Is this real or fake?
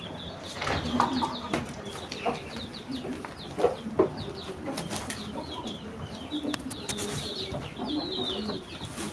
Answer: real